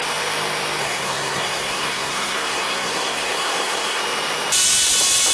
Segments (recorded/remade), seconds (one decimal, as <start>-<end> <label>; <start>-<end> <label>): 0.0-0.8 recorded; 0.8-4.0 remade; 4.0-5.3 recorded